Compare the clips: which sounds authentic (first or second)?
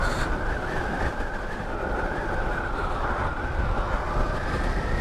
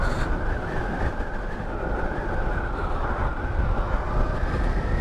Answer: second